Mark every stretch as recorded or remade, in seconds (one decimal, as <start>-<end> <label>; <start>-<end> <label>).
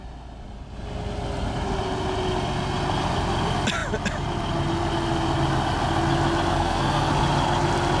0.0-6.5 recorded; 6.5-7.1 remade; 7.1-8.0 recorded